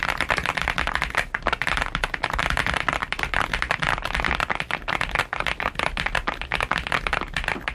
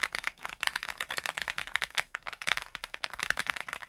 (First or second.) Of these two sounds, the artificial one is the second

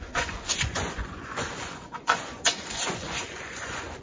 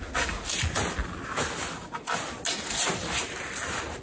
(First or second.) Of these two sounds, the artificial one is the first